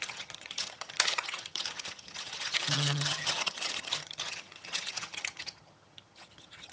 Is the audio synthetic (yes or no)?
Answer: yes